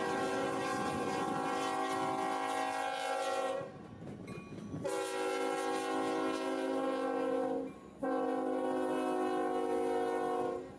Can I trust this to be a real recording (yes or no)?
yes